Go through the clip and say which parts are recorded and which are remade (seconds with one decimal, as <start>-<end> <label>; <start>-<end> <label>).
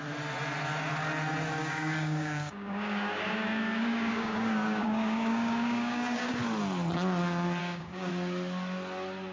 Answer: 0.0-1.6 recorded; 1.6-6.3 remade; 6.3-7.6 recorded; 7.6-8.1 remade; 8.1-9.3 recorded